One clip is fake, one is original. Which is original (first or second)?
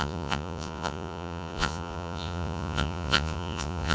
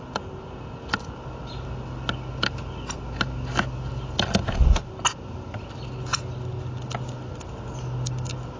second